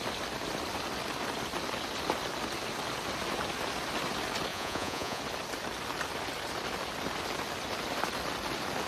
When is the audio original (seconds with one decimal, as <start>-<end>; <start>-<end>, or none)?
0.0-4.5; 5.2-8.9

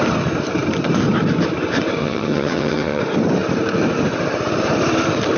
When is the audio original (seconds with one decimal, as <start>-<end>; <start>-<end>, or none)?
0.0-2.0; 3.0-5.4

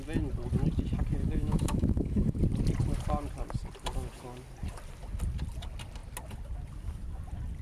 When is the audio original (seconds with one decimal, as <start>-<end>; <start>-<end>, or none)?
0.0-1.2; 2.4-7.6